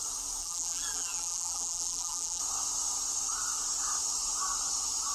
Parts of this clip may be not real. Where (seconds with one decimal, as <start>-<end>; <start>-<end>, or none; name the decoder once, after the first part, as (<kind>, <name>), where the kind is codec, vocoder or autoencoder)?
0.4-2.4 (vocoder, BigVGAN v2)